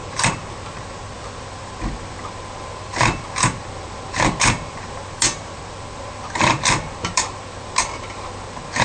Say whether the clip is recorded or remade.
remade